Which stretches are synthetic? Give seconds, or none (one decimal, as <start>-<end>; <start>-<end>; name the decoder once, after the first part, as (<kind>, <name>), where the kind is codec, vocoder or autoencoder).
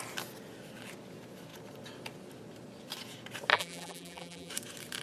3.5-4.5 (vocoder, BigVGAN v2)